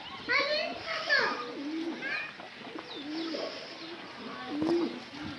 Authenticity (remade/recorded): recorded